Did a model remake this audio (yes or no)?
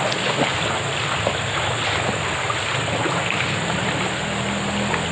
no